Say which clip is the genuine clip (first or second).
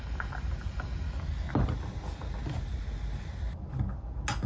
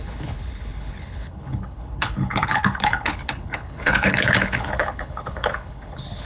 first